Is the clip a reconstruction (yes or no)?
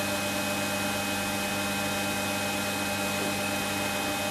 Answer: no